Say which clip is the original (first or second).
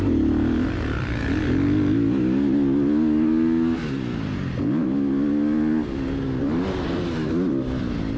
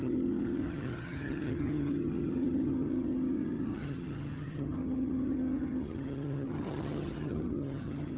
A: first